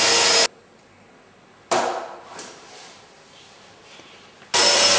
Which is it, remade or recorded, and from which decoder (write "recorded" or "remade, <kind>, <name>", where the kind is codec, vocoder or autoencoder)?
recorded